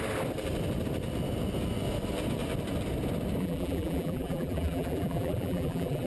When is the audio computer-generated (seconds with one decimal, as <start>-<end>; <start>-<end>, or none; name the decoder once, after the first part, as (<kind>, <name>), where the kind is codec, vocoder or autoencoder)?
3.4-6.1 (vocoder, BigVGAN v2)